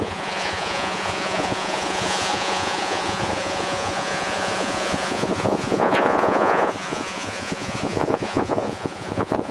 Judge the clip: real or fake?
fake